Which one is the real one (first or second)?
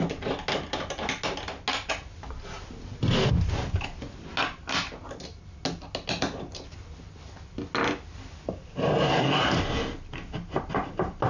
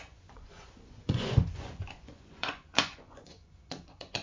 first